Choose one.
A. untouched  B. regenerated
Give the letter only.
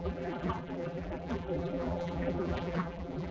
B